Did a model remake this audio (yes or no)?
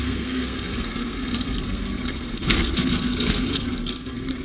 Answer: yes